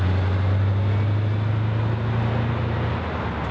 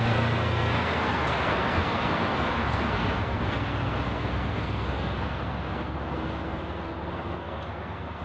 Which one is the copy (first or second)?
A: second